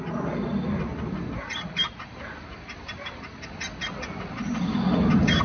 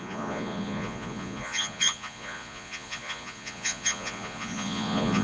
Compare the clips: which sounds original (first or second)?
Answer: first